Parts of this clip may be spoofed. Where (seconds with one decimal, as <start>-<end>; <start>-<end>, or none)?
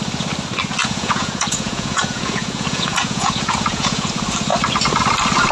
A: 0.8-4.1